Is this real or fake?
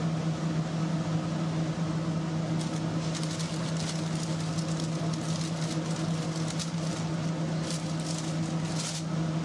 real